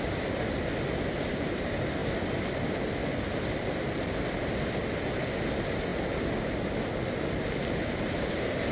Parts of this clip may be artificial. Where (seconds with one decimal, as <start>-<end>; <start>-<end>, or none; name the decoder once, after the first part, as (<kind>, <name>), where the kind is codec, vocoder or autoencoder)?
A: none